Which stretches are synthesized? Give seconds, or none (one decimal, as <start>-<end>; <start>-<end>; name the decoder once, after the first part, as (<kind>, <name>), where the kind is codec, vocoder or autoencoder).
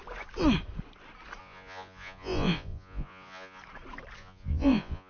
1.4-3.6 (vocoder, Vocos); 4.2-5.1